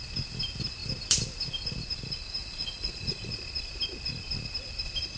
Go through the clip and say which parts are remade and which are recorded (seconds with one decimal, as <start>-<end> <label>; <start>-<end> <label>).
0.0-2.4 recorded; 2.4-3.4 remade; 3.4-5.2 recorded